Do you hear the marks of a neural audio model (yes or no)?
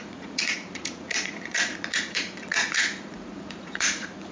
yes